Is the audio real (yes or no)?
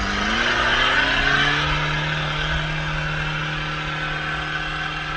yes